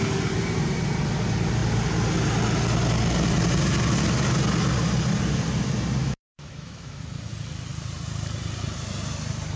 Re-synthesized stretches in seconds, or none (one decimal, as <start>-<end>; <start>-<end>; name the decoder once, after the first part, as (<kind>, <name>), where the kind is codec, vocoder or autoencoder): 6.0-7.0 (autoencoder, DAC-VAE)